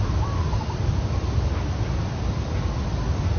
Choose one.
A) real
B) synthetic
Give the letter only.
A